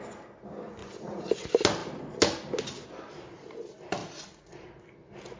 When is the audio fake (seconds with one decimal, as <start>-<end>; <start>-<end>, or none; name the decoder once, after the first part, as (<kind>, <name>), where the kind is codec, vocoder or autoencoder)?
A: 0.8-1.3 (vocoder, Vocos); 4.0-4.7